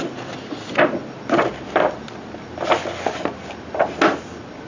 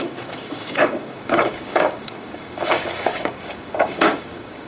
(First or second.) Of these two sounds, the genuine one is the first